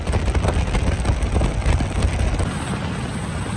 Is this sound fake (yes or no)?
no